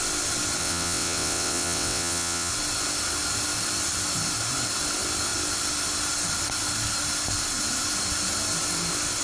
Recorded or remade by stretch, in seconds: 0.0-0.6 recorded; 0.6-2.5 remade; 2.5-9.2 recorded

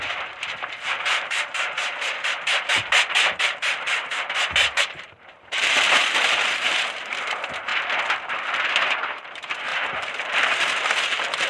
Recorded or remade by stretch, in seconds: 0.0-7.7 remade; 7.7-8.3 recorded; 8.3-11.5 remade

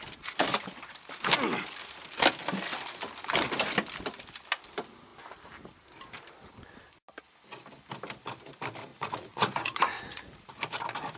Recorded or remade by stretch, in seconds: 0.0-8.9 recorded; 8.9-10.5 remade; 10.5-11.2 recorded

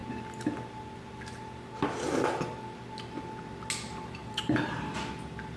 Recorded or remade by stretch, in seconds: 0.0-4.2 recorded; 4.2-5.1 remade; 5.1-5.6 recorded

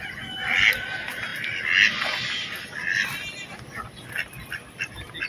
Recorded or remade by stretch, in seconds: 0.0-5.3 recorded

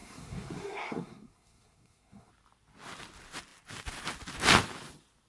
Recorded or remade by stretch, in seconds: 0.0-2.3 remade; 2.3-5.3 recorded

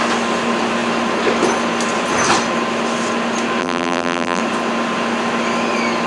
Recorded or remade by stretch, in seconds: 0.0-3.6 recorded; 3.6-4.4 remade; 4.4-6.1 recorded

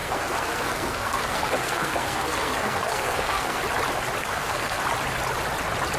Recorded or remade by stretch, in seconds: 0.0-3.6 remade; 3.6-4.2 recorded; 4.2-4.8 remade; 4.8-6.0 recorded